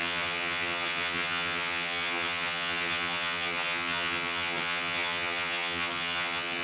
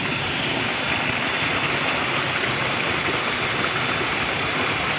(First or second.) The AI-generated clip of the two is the first